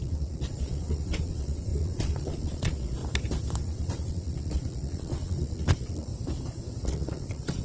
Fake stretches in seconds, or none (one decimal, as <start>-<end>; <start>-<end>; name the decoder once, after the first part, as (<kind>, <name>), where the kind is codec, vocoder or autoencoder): 0.0-3.0 (vocoder, Vocos); 3.6-6.1; 6.8-7.6